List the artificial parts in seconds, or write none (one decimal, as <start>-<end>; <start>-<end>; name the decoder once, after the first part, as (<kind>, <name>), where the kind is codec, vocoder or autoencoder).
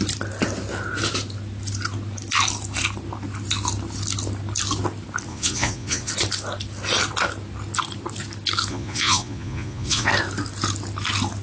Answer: 5.3-6.1 (vocoder, Vocos); 8.7-10.1